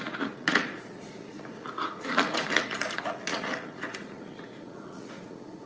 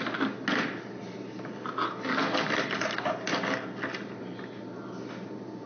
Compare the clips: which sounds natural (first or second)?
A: second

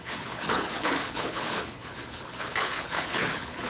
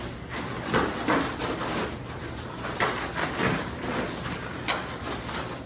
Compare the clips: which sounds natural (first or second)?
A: second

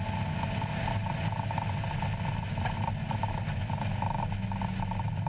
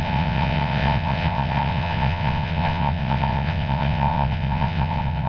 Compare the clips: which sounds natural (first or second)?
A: first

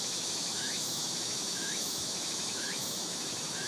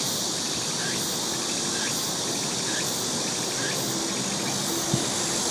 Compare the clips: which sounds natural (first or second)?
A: second